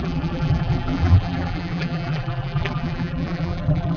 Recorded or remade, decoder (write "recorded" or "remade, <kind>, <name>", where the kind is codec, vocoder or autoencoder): remade, vocoder, BigVGAN v2